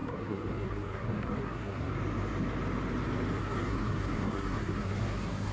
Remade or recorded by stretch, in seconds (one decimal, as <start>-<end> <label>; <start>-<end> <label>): 0.0-1.9 remade; 1.9-3.4 recorded; 3.4-5.5 remade